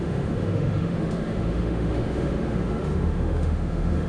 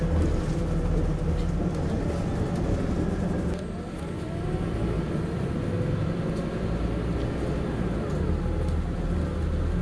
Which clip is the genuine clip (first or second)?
second